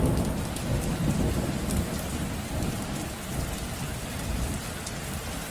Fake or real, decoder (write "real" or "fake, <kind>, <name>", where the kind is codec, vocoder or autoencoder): real